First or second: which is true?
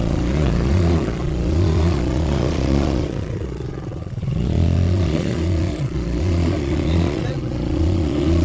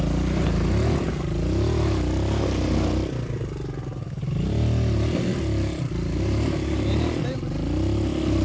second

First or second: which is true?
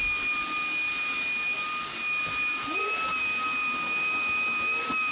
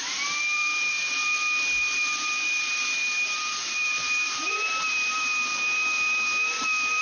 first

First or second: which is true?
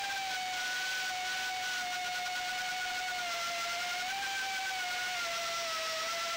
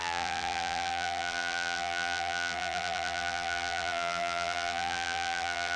first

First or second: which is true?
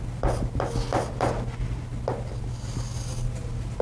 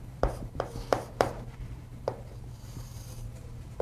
first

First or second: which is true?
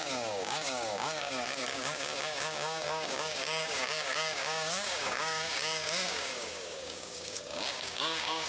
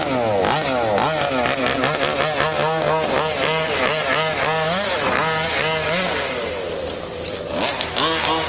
second